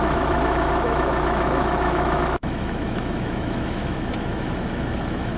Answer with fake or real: fake